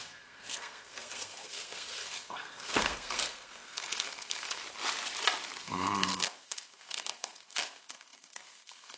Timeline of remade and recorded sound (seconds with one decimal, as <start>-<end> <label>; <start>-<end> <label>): 0.0-4.6 remade; 4.6-5.6 recorded; 5.6-9.0 remade